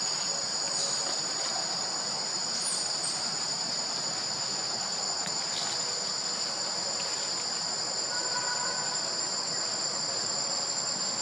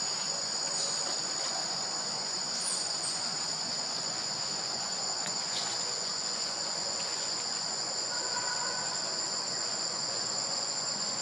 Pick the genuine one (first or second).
first